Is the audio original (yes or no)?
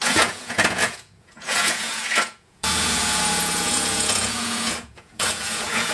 no